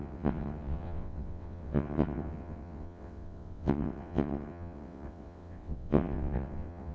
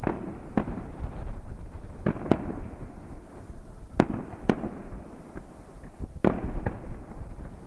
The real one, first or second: second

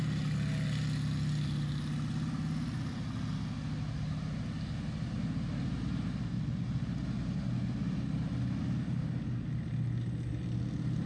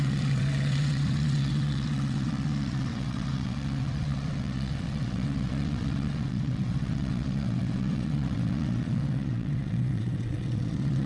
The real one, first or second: first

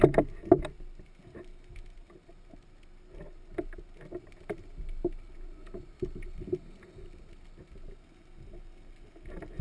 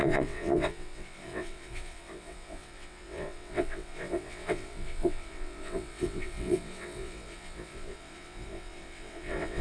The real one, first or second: first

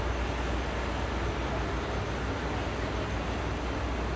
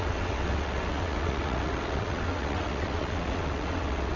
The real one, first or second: first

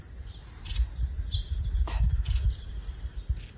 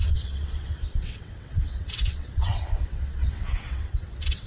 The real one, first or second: first